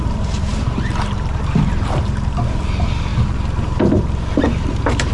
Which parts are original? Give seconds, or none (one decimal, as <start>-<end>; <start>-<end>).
3.1-4.4